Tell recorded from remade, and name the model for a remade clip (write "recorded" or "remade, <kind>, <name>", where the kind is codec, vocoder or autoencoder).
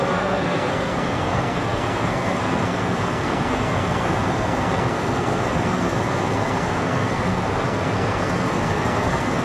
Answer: remade, codec, SNAC